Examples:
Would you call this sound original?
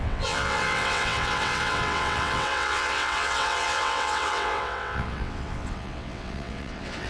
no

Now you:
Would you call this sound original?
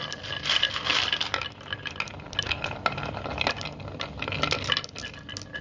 yes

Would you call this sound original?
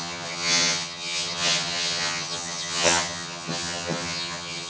no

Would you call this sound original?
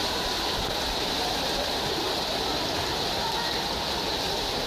yes